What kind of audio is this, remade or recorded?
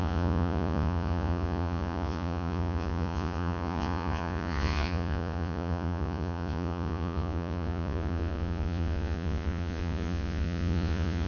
remade